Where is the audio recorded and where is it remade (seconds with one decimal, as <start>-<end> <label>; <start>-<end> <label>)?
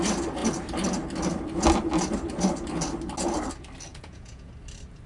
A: 0.0-3.9 recorded; 3.9-4.5 remade; 4.5-5.1 recorded